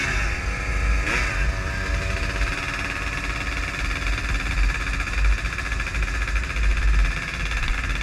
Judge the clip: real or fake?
real